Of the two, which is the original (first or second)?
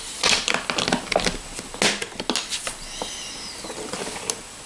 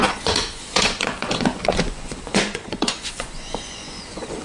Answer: first